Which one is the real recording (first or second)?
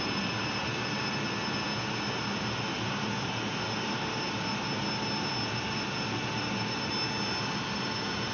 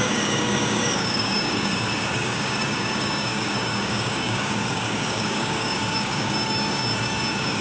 first